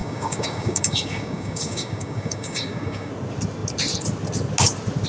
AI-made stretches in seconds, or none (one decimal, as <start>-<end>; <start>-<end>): 0.0-3.1

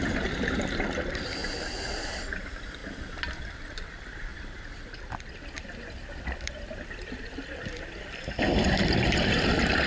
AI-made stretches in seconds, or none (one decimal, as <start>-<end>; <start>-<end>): 0.0-1.4; 2.1-2.8; 3.5-9.9

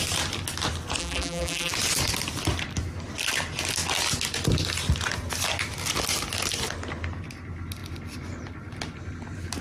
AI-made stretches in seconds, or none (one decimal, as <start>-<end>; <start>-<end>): 1.0-1.7

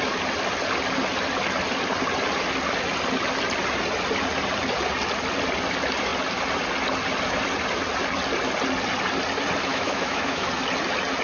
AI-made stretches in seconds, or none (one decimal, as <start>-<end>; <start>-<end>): 9.7-10.5

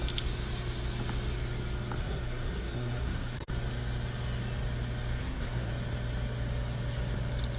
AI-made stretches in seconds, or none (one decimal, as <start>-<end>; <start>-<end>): 2.0-3.5; 5.2-5.7

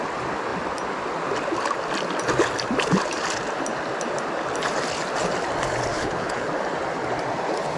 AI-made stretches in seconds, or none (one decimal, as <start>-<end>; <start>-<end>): 5.9-6.5

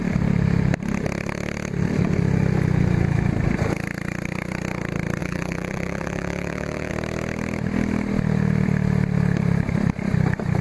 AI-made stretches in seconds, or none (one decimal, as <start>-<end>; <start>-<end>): 5.2-6.9

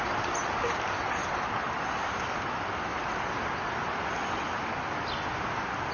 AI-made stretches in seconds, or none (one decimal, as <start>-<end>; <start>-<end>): 1.2-2.3; 2.9-3.5